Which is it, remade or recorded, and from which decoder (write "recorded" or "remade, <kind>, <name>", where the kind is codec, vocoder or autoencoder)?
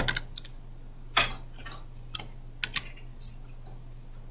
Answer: recorded